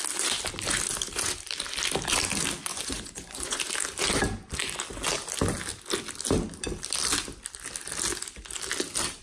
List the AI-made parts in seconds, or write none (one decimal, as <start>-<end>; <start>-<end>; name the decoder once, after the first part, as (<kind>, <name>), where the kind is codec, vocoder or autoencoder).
2.7-3.6 (vocoder, Vocos)